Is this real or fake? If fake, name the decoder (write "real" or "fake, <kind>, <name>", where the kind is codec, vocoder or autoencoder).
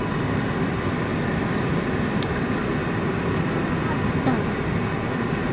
real